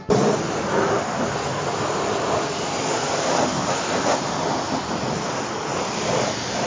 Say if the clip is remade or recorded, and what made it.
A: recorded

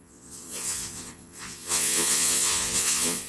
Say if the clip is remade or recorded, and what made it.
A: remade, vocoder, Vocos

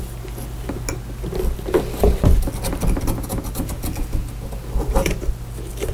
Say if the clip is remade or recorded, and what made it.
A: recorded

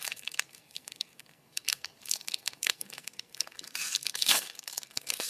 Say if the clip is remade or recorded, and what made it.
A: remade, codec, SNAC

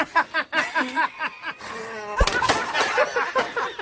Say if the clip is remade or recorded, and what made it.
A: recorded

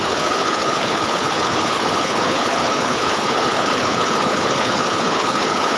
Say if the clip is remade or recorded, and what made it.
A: remade, codec, HILCodec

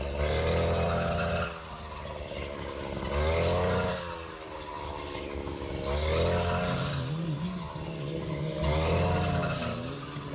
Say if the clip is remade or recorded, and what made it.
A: recorded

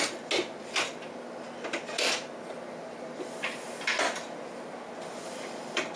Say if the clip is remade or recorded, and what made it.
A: recorded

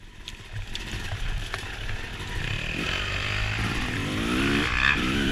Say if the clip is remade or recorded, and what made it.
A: remade, vocoder, BigVGAN v2